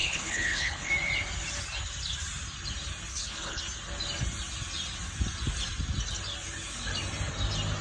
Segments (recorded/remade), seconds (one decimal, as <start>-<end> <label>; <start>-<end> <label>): 0.0-0.9 remade; 0.9-3.1 recorded; 3.1-3.6 remade; 3.6-7.8 recorded